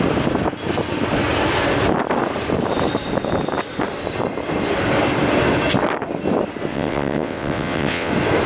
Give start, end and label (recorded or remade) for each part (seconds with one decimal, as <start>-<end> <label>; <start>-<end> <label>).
0.0-6.7 recorded; 6.7-8.1 remade; 8.1-8.5 recorded